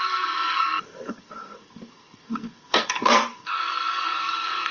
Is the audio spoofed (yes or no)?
yes